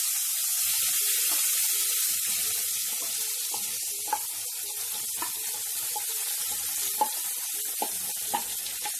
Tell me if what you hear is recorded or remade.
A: remade